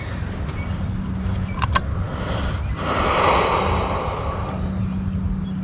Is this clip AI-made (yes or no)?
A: no